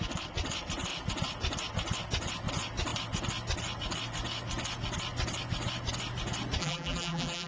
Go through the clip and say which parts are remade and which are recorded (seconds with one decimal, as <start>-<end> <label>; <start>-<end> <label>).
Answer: 0.0-6.6 recorded; 6.6-7.5 remade